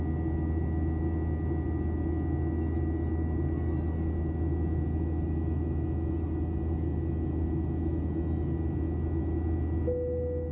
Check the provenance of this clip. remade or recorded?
recorded